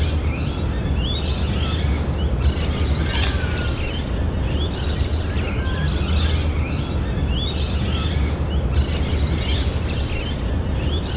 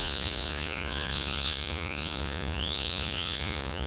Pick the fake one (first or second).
second